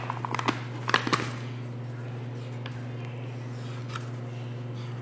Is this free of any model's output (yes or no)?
yes